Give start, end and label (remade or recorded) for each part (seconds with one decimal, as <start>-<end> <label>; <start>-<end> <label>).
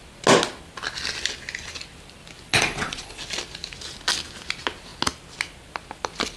0.0-2.5 recorded; 2.5-3.2 remade; 3.2-6.4 recorded